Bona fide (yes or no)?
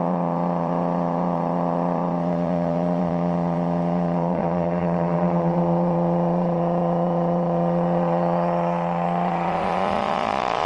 no